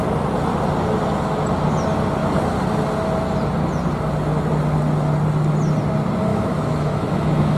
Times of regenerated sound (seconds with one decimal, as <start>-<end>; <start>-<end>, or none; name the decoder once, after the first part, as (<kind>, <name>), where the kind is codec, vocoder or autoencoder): 6.3-7.6 (autoencoder, DAC-VAE)